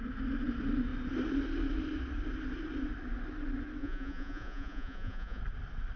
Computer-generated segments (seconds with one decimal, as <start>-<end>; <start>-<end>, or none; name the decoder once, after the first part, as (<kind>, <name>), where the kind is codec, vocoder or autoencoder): 3.8-5.4 (vocoder, Vocos)